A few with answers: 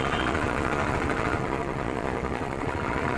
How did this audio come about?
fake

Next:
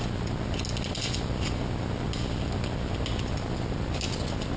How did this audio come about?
real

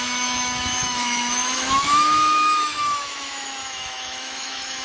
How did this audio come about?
fake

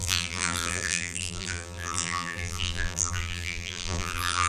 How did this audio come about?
fake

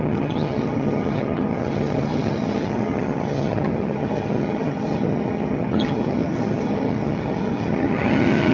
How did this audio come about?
fake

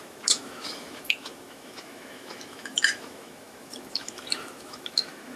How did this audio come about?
fake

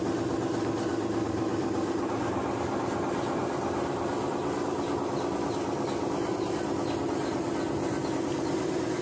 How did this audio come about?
real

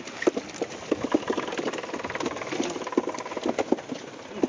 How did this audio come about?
real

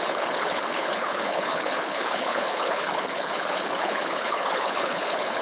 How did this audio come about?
fake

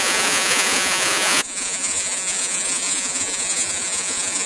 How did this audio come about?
fake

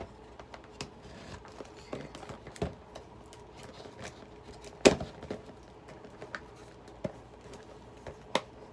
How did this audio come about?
real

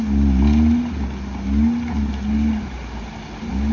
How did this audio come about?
real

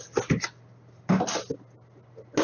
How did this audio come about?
real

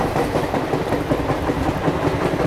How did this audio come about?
real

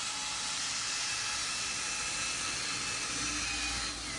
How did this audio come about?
real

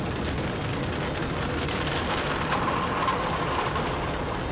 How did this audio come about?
real